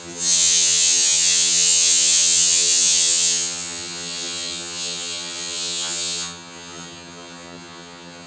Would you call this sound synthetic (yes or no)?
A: yes